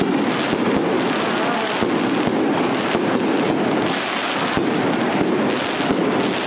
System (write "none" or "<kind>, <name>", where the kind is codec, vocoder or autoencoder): none